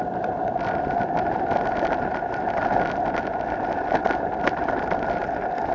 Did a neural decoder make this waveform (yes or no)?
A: no